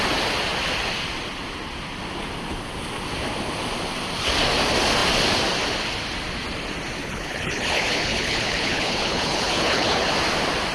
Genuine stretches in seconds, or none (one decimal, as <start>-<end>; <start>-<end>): 0.0-7.0; 10.1-10.7